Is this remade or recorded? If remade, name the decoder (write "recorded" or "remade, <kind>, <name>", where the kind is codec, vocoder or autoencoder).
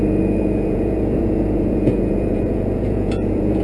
remade, vocoder, Vocos